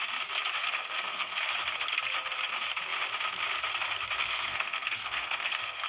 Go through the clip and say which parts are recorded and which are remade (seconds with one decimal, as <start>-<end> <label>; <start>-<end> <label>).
0.0-0.7 recorded; 0.7-1.3 remade; 1.3-4.2 recorded; 4.2-5.9 remade